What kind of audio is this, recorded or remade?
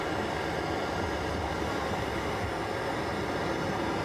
recorded